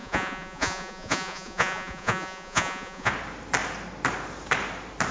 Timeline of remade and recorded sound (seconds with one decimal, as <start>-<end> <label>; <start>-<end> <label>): 0.0-3.1 remade; 3.1-5.1 recorded